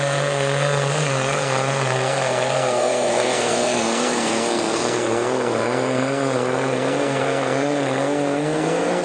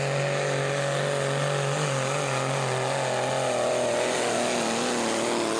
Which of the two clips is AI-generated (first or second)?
first